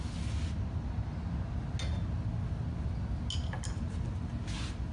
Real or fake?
real